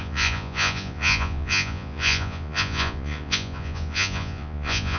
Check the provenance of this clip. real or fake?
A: fake